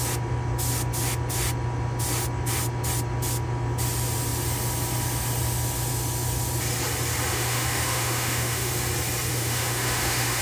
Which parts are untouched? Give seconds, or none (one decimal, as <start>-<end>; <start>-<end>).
0.0-7.3; 8.7-9.3